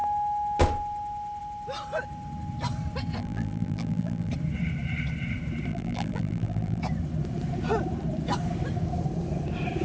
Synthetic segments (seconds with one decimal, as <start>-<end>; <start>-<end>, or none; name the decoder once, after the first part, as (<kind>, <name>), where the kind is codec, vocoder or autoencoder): 3.2-4.3 (vocoder, BigVGAN v2); 5.7-6.8